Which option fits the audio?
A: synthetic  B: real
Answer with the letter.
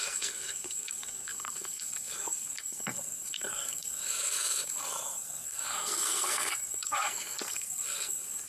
A